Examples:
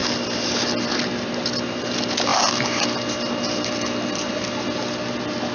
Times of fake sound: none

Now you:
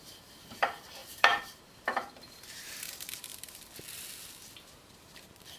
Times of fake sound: 0.0-3.3 (vocoder, BigVGAN v2); 5.0-5.6

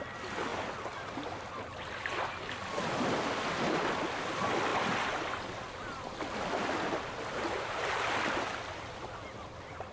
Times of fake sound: none

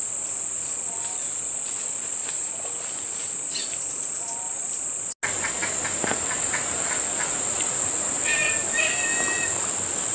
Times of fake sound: 2.2-3.9 (vocoder, BigVGAN v2); 6.0-8.0

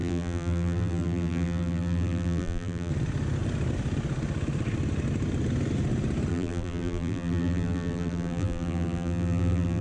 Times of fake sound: 0.0-2.9 (vocoder, BigVGAN v2); 6.3-9.8

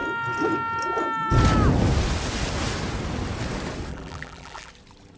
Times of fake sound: 3.9-4.7 (vocoder, BigVGAN v2)

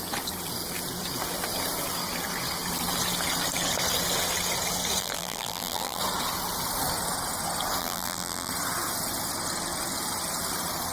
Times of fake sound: 5.0-6.0 (vocoder, BigVGAN v2); 7.8-8.5